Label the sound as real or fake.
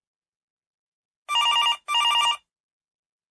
real